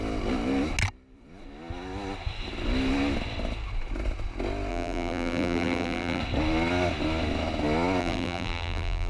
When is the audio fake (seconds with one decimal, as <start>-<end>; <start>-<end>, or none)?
4.7-6.2; 8.0-9.1